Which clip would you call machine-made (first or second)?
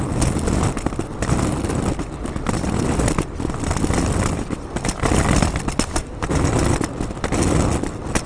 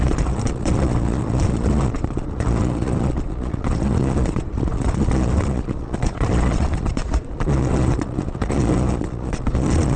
second